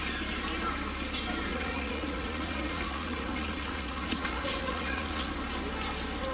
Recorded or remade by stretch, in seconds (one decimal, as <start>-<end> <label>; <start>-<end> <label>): 0.0-1.5 recorded; 1.5-5.3 remade; 5.3-6.3 recorded